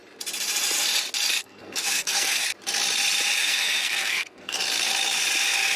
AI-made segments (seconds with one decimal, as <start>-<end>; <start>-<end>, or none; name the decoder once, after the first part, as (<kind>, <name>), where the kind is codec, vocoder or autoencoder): 1.4-2.5 (codec, SNAC); 3.4-4.6